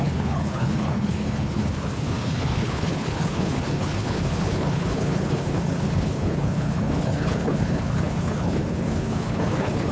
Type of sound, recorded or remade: remade